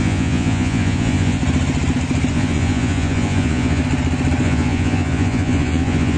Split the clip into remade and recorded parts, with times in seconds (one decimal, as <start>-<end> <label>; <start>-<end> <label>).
0.0-1.4 remade; 1.4-2.3 recorded; 2.3-3.8 remade; 3.8-4.4 recorded; 4.4-6.2 remade